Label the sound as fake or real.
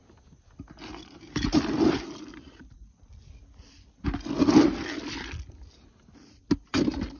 real